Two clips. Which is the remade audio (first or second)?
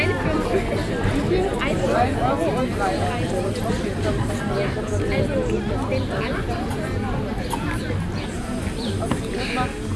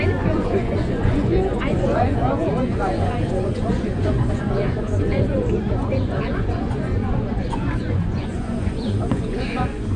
second